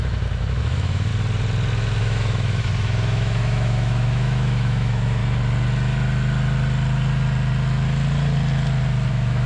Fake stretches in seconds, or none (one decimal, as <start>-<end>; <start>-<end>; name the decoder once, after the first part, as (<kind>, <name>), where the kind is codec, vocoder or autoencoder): 0.0-1.1 (autoencoder, DAC-VAE); 2.0-5.2; 9.1-9.5